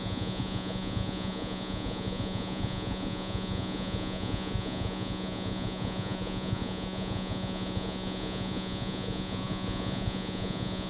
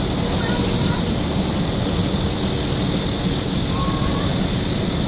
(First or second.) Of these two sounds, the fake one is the first